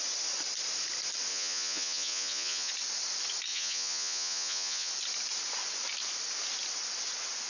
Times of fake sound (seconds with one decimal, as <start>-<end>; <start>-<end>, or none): 1.3-2.7; 3.5-4.9